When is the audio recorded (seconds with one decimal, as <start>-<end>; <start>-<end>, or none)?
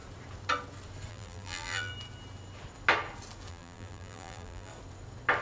0.0-1.1; 1.9-3.5; 4.7-5.4